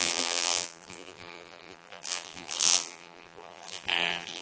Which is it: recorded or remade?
remade